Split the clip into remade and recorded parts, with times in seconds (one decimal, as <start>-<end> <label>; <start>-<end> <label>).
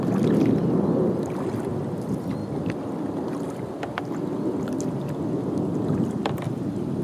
0.0-7.0 recorded